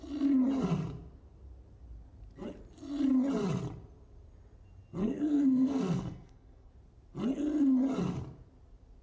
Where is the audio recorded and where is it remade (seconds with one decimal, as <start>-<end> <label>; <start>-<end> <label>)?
0.0-5.0 recorded; 5.0-6.7 remade; 6.7-9.0 recorded